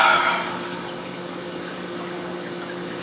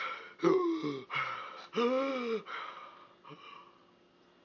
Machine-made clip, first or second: first